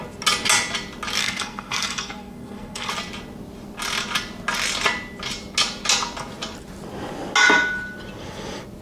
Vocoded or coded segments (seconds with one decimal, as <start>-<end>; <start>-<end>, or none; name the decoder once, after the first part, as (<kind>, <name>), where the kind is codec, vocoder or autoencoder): 1.2-2.9 (codec, SNAC)